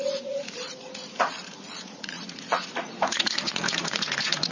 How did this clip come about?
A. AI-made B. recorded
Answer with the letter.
A